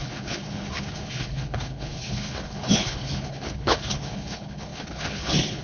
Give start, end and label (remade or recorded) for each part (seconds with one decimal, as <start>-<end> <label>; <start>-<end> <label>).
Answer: 0.0-5.6 remade